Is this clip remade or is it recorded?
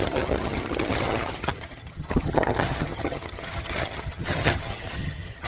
remade